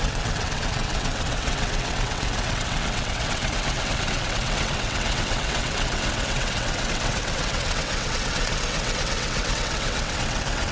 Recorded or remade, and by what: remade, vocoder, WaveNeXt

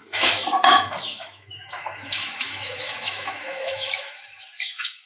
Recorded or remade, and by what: remade, autoencoder, DAC-VAE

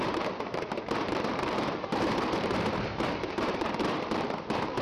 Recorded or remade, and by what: remade, vocoder, BigVGAN v2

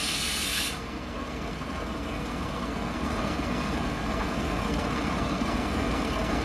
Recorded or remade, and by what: remade, codec, SNAC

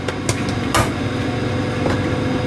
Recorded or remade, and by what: recorded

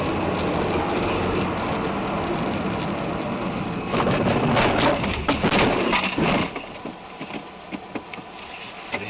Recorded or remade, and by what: recorded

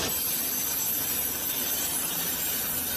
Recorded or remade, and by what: remade, vocoder, BigVGAN v2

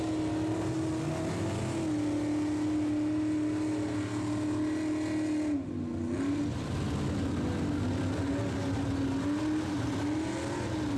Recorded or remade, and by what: recorded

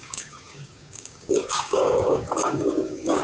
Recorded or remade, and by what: remade, codec, DAC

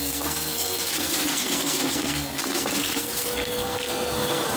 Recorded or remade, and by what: remade, codec, SNAC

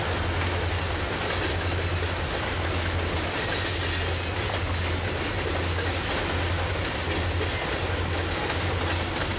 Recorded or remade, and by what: recorded